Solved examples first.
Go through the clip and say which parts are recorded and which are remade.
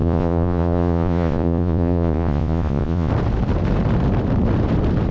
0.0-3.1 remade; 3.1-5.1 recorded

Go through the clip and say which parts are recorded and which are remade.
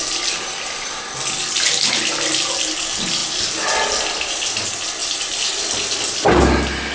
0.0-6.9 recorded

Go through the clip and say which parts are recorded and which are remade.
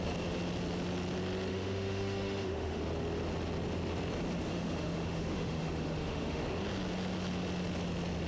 0.0-1.5 recorded; 1.5-2.8 remade; 2.8-4.5 recorded; 4.5-6.4 remade; 6.4-8.3 recorded